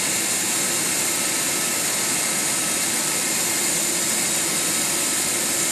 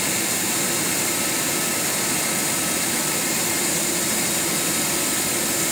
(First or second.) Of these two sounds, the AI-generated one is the second